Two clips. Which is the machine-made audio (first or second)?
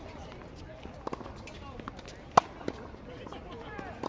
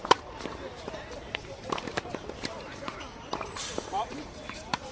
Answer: second